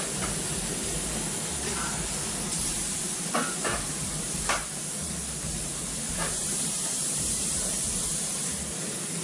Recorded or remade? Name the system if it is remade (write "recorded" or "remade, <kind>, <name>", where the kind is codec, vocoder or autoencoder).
remade, vocoder, BigVGAN v2